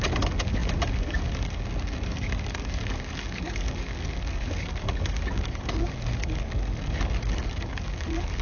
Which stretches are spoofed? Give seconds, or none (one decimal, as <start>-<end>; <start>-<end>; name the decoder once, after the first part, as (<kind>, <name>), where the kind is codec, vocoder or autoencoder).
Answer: 0.0-8.4 (codec, DAC)